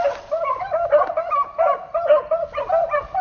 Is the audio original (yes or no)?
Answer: yes